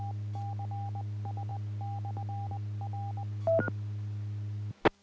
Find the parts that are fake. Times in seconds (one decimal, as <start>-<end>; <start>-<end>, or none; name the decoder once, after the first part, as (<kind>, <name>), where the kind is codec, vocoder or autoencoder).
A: none